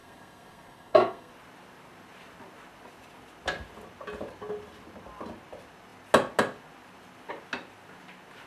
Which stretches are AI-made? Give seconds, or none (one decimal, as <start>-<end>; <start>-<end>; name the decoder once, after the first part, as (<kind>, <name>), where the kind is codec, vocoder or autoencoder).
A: 0.0-1.3 (codec, SNAC)